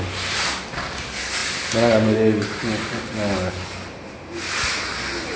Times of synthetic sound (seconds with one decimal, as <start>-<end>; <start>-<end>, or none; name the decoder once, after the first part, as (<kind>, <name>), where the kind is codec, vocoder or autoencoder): none